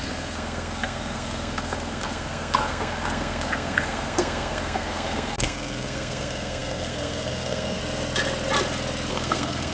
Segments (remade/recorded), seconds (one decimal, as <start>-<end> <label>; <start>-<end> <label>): 0.0-7.8 remade; 7.8-9.1 recorded; 9.1-9.7 remade